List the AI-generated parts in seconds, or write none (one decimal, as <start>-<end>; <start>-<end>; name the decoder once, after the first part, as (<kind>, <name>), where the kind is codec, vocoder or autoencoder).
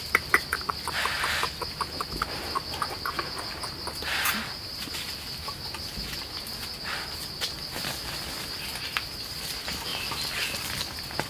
9.9-10.8 (vocoder, BigVGAN v2)